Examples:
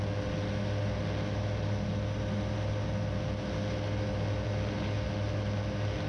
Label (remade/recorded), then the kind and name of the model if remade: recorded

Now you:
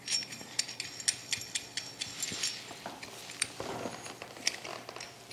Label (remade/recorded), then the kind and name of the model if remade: recorded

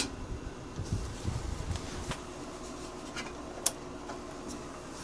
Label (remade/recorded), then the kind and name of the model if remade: recorded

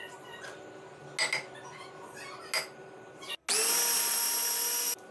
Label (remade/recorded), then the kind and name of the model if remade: recorded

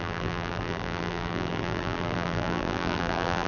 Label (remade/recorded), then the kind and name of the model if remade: remade, vocoder, BigVGAN v2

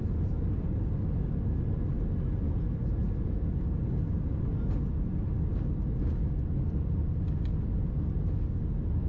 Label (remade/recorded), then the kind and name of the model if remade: recorded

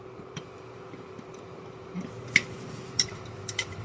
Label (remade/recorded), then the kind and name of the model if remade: remade, vocoder, BigVGAN v2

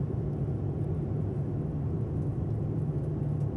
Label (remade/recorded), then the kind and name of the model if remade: recorded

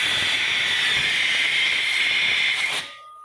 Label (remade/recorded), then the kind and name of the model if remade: recorded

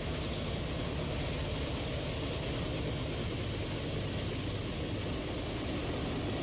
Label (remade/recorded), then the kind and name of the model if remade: recorded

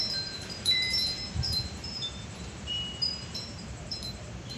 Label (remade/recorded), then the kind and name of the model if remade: remade, vocoder, BigVGAN v2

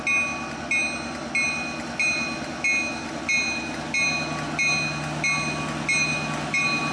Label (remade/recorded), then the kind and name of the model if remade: recorded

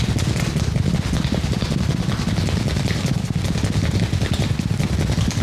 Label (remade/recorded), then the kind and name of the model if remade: recorded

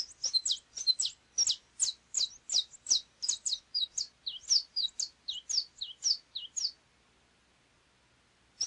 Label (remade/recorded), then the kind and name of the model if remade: recorded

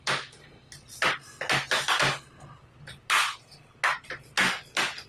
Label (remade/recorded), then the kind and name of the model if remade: recorded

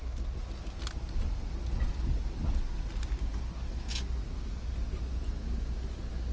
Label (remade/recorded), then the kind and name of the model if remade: recorded